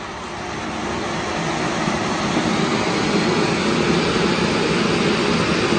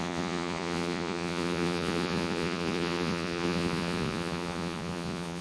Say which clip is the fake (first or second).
second